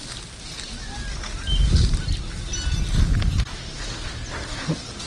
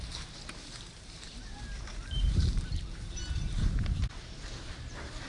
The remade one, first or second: second